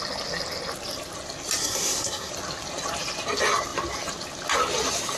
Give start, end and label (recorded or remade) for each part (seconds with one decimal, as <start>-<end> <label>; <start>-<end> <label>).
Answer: 0.0-1.6 recorded; 1.6-2.3 remade; 2.3-5.2 recorded